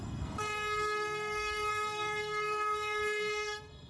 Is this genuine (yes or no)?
no